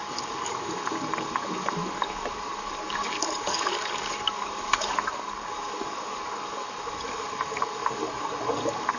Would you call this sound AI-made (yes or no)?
yes